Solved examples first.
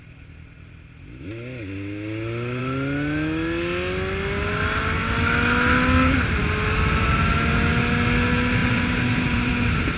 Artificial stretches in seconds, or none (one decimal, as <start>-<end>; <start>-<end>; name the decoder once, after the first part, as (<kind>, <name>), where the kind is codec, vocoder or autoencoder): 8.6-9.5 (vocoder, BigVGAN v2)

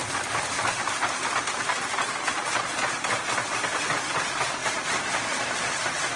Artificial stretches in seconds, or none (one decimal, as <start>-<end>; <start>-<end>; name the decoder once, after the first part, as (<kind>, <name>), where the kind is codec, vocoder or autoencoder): none

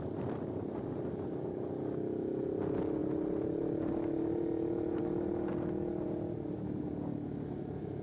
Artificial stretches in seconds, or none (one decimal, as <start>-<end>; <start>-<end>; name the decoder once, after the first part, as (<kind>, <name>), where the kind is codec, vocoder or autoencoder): 3.0-5.0 (vocoder, BigVGAN v2)